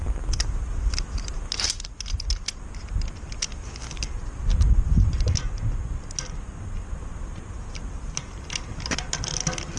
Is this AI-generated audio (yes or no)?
no